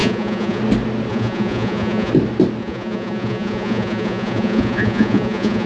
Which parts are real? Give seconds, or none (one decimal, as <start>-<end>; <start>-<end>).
0.6-1.1; 2.1-2.6